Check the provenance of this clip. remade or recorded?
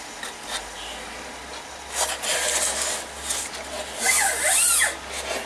recorded